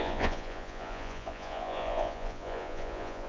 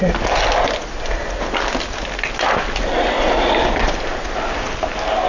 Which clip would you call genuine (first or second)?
second